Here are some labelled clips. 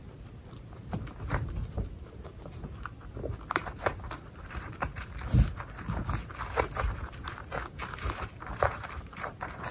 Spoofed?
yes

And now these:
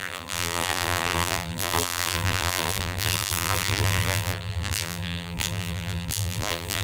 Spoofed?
yes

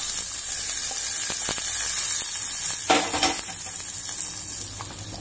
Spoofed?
no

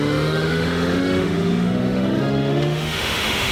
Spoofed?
yes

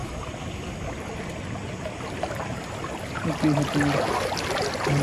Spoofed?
no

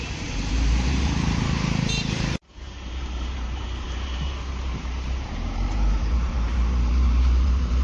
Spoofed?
yes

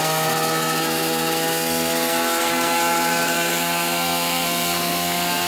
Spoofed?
yes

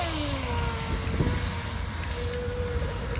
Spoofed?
no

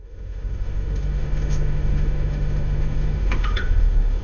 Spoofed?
yes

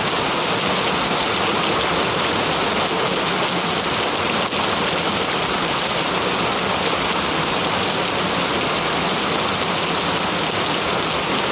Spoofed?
no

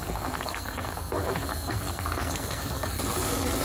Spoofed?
yes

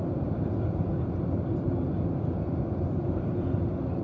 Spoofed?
no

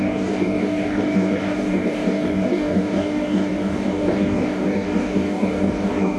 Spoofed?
yes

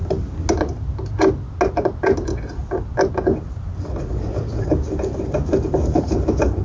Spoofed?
no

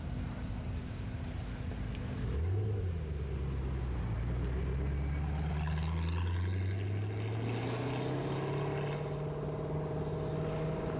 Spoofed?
no